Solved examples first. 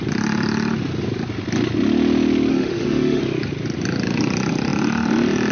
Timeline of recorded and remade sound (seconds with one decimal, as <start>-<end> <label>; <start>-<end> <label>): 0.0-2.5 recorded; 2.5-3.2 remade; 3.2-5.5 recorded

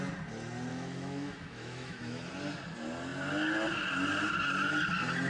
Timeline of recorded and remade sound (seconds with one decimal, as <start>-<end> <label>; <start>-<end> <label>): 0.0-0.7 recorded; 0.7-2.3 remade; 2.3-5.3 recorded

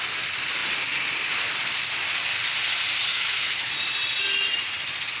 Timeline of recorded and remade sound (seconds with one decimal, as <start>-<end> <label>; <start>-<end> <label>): 0.0-3.1 recorded; 3.1-3.7 remade; 3.7-5.2 recorded

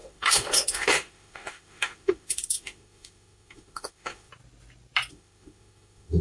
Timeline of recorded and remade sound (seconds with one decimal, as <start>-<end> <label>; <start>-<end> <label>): 0.0-4.3 remade; 4.3-5.1 recorded; 5.1-6.2 remade

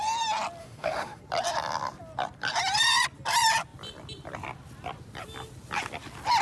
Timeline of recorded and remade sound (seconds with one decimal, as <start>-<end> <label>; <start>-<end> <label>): 0.0-0.6 recorded; 0.6-1.2 remade; 1.2-6.4 recorded